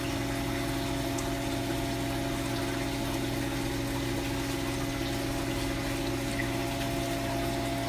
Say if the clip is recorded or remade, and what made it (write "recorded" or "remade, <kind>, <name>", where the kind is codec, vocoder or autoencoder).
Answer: recorded